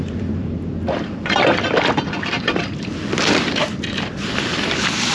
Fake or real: fake